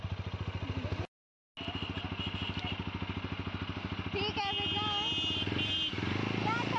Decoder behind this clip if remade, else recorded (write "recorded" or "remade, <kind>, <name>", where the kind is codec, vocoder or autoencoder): recorded